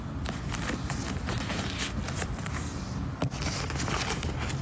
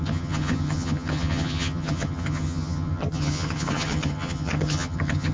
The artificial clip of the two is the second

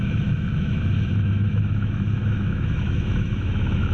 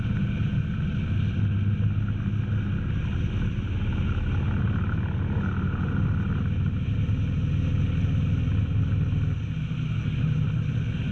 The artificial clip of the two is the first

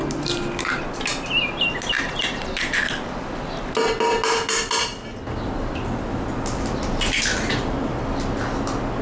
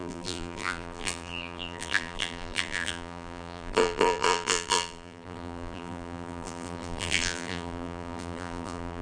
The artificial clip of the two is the second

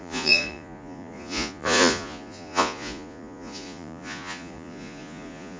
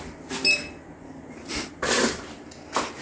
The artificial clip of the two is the first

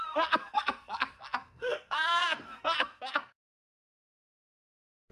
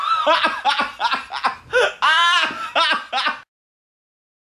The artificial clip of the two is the first